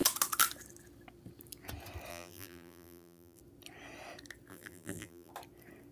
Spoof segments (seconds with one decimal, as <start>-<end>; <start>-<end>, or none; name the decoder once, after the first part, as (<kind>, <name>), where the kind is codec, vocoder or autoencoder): 2.1-3.4 (vocoder, BigVGAN v2); 4.5-5.3

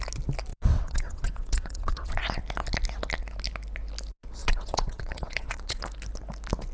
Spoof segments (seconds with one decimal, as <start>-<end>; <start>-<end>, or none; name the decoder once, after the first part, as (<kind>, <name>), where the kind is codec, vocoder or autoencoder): 0.5-2.1 (vocoder, WaveNeXt); 4.4-5.8

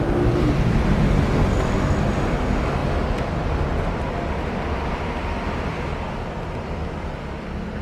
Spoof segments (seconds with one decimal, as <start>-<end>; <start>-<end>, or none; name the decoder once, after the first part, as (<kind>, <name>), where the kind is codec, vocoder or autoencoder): none

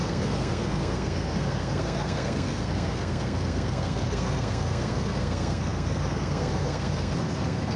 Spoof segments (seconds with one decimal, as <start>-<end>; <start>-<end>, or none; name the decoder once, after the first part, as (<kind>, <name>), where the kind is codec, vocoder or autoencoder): 0.0-7.8 (codec, SNAC)

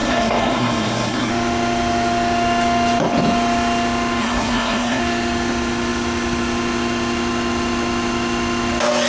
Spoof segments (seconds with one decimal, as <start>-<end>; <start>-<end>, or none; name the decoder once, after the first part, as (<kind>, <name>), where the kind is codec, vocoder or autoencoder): 0.0-1.3 (codec, SNAC); 4.2-5.0

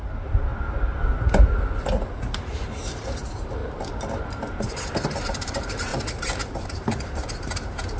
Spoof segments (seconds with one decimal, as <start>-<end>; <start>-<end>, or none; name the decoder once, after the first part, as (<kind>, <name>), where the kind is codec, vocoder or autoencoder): 0.0-0.5 (vocoder, BigVGAN v2); 2.3-3.6; 4.2-5.9; 6.5-8.0

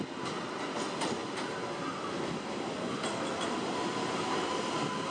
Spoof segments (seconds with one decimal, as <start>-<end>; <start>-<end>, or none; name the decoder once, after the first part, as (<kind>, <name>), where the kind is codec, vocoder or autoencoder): none

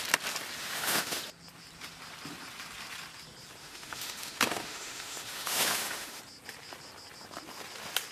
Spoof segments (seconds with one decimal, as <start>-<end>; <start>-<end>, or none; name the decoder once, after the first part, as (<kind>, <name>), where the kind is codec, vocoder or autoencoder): 0.6-1.2 (autoencoder, DAC-VAE); 3.6-6.2